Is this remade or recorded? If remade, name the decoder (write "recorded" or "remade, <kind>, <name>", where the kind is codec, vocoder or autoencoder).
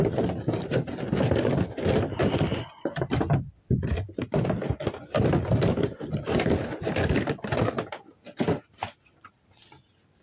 recorded